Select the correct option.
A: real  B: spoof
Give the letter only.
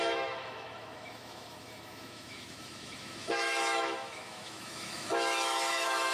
B